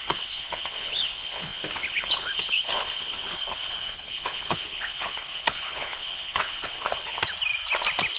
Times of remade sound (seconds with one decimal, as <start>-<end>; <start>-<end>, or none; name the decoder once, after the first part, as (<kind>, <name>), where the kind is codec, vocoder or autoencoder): 0.0-7.2 (codec, HILCodec)